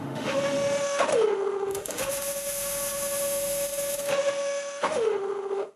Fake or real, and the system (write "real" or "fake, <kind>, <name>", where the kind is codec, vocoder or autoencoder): fake, autoencoder, DAC-VAE